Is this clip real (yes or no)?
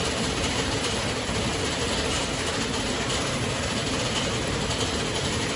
no